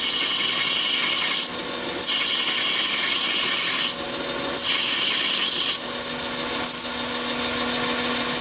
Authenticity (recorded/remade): recorded